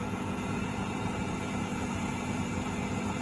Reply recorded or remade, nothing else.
remade